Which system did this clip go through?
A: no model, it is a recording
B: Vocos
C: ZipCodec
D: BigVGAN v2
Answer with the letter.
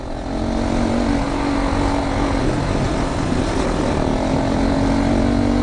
A